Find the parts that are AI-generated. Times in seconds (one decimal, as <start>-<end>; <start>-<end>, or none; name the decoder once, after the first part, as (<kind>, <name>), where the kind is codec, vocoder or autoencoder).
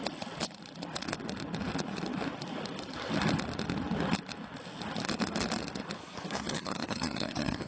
6.0-7.7 (codec, SNAC)